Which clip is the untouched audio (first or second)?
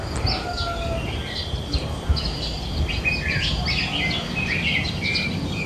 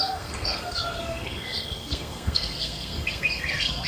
first